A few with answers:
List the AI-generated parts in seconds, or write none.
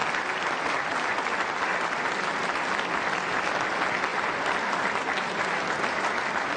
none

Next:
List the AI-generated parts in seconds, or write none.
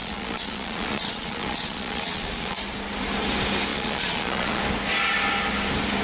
0.0-2.6 (vocoder, Vocos); 3.7-4.6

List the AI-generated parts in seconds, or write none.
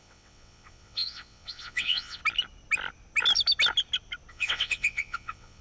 0.0-2.2 (vocoder, WaveNeXt); 4.3-5.6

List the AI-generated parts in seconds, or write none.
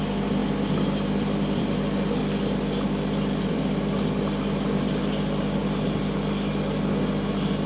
0.0-5.6 (vocoder, BigVGAN v2)